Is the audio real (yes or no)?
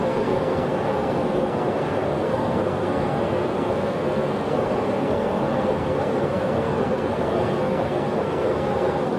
no